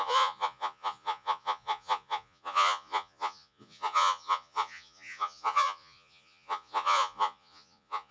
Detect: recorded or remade remade